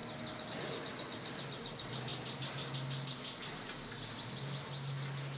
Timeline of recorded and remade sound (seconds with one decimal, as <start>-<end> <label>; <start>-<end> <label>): 0.0-5.4 recorded